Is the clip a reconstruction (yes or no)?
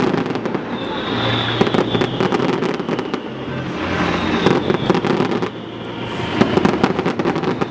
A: no